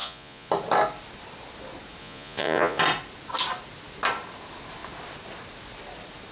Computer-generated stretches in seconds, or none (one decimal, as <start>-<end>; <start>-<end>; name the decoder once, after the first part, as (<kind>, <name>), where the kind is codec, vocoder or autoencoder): 0.0-0.5 (vocoder, Vocos); 2.0-2.8